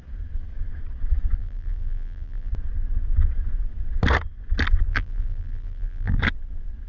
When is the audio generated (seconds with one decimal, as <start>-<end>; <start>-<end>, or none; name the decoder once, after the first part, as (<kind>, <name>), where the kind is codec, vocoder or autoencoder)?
1.4-2.5 (vocoder, BigVGAN v2); 4.9-6.2